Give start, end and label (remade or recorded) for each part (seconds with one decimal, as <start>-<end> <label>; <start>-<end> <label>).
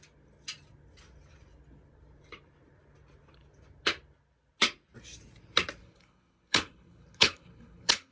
0.0-5.8 recorded; 5.8-8.1 remade